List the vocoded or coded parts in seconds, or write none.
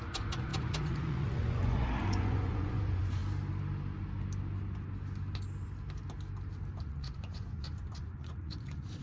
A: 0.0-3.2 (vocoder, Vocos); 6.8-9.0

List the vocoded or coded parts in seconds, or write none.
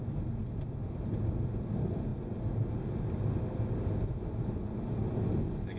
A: none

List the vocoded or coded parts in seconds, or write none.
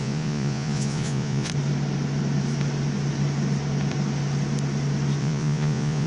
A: 0.0-1.5 (vocoder, Vocos); 5.2-6.1